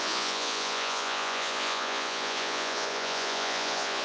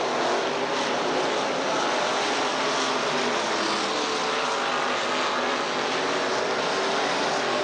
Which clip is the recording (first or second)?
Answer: second